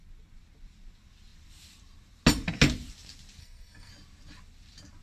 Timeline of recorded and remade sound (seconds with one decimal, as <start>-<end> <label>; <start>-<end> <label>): 0.0-3.4 recorded; 3.4-3.9 remade; 3.9-5.0 recorded